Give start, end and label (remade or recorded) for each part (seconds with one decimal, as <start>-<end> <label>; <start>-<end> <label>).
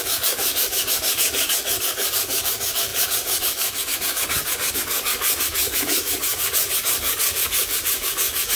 0.0-8.6 remade